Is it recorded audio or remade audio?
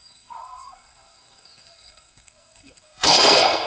remade